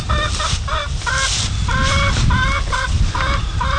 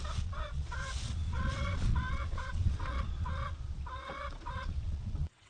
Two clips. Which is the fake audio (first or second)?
second